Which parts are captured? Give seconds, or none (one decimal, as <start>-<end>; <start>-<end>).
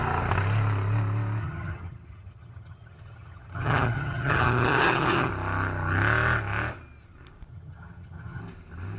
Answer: 0.0-1.4; 5.3-7.5; 8.4-9.0